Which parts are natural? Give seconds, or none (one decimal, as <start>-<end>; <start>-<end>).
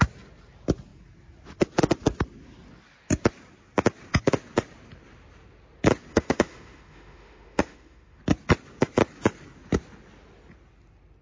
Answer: 0.0-6.1; 8.2-11.2